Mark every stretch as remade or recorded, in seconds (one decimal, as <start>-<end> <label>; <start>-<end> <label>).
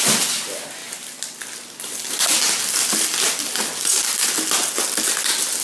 0.0-5.6 recorded